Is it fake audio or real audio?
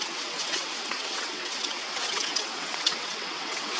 fake